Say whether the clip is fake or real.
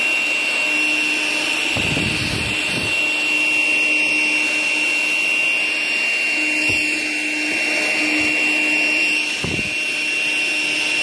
real